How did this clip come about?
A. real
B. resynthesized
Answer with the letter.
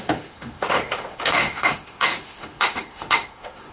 B